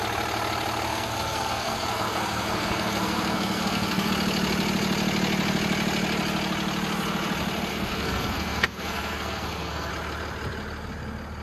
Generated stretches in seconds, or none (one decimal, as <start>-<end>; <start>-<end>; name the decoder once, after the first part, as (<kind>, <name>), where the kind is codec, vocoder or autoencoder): 0.9-4.1 (codec, SNAC); 7.7-9.9

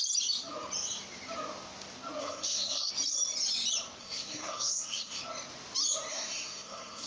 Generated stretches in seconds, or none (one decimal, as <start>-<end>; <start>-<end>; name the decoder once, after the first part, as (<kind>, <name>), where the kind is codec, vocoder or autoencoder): 2.2-2.9 (codec, SNAC); 4.0-5.2; 6.1-7.1

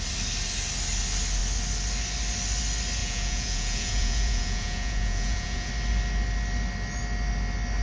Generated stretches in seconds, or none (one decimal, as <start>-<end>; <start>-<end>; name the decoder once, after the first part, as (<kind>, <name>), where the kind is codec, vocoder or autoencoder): 3.0-5.7 (vocoder, Vocos)

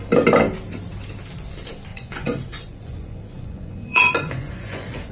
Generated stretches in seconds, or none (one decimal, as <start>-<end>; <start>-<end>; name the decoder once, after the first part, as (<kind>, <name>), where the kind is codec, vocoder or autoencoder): 1.9-5.1 (vocoder, Vocos)

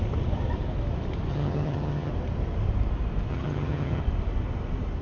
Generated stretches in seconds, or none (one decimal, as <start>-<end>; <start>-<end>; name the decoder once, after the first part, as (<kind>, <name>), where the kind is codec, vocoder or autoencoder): 1.3-2.1 (vocoder, HiFi-GAN); 3.3-4.0

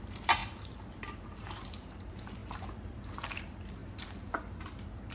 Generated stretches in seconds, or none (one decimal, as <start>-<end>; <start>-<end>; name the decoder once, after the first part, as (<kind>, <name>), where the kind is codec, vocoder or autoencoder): 0.0-5.1 (vocoder, BigVGAN v2)